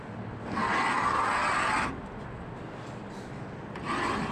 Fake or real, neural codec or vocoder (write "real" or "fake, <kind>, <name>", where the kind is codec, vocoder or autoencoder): real